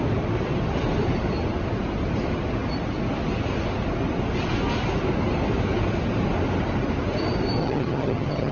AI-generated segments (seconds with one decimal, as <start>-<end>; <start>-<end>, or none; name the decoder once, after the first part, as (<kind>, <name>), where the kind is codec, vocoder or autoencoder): 7.6-8.5 (vocoder, HiFi-GAN)